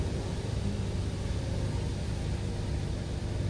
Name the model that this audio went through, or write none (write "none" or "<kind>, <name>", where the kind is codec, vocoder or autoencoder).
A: none